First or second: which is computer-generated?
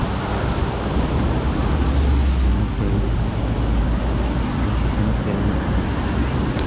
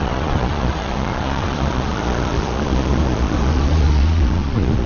second